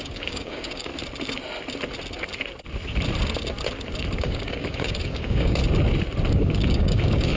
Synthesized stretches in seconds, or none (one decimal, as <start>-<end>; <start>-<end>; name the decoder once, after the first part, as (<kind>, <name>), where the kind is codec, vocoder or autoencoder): 0.0-0.9 (codec, DAC); 4.2-5.6; 6.3-7.4